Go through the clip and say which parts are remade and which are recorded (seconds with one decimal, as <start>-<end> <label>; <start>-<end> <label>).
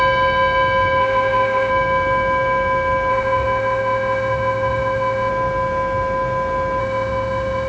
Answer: 0.0-1.0 recorded; 1.0-1.7 remade; 1.7-3.1 recorded; 3.1-5.3 remade; 5.3-6.8 recorded; 6.8-7.7 remade